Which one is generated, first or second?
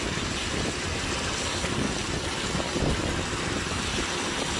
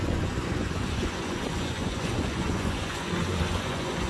second